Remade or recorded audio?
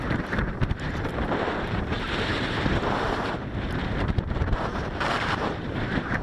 remade